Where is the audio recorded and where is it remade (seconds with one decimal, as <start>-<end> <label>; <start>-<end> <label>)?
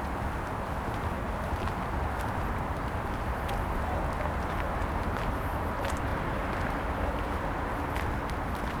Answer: 0.0-8.8 recorded